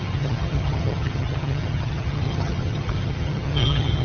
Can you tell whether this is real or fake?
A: fake